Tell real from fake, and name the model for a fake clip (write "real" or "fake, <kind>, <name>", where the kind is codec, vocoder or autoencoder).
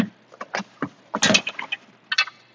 real